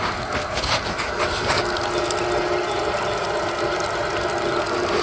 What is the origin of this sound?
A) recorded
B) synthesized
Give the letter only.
A